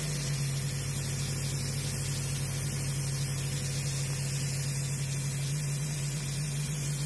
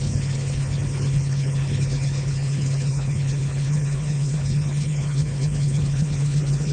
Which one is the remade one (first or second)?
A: second